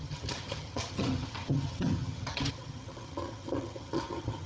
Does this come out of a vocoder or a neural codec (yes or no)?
yes